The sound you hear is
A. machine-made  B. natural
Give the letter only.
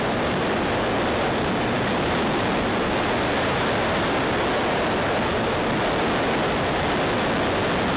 B